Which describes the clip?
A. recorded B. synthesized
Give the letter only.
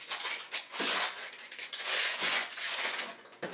B